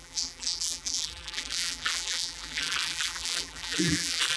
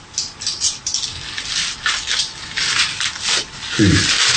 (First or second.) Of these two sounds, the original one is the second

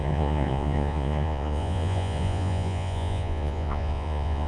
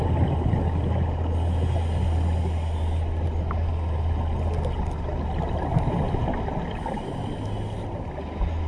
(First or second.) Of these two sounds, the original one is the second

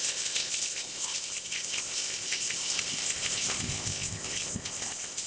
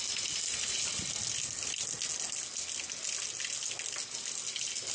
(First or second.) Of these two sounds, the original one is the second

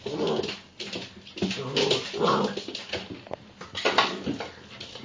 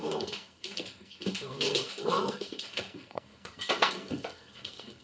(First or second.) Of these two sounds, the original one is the first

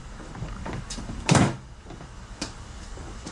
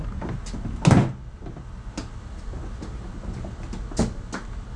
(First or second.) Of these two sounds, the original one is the second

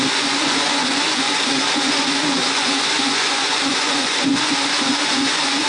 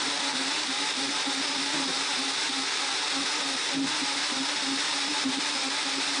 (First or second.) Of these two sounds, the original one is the second